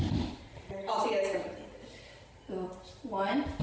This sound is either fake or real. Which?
fake